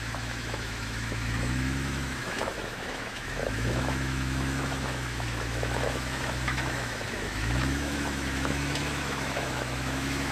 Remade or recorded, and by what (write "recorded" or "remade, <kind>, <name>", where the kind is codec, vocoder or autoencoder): remade, autoencoder, DAC-VAE